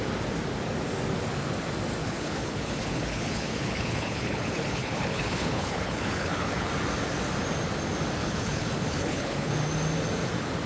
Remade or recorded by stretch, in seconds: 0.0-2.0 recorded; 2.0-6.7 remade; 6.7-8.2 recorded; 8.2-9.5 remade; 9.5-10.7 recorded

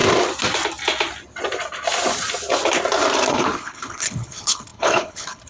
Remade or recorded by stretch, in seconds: 0.0-3.3 recorded; 3.3-5.5 remade

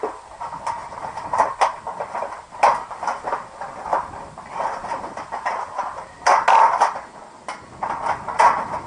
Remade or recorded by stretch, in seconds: 0.0-8.9 recorded

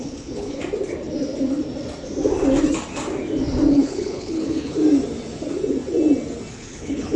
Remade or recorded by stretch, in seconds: 0.0-0.6 remade; 0.6-3.7 recorded; 3.7-4.8 remade; 4.8-6.5 recorded; 6.5-7.2 remade

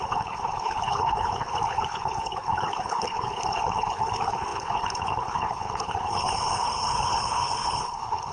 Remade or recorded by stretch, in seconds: 0.0-8.3 remade